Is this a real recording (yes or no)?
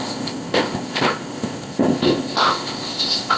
no